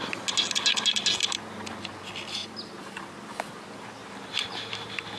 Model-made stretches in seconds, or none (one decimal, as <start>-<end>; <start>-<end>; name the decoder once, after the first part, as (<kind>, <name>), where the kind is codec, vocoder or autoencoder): none